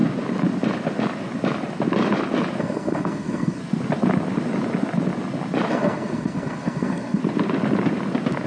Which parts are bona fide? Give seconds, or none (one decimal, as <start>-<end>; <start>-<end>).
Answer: 0.0-2.6; 3.6-5.7; 7.2-8.5